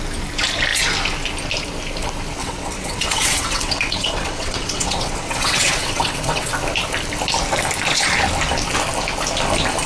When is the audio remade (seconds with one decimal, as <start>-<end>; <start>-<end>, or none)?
2.4-6.5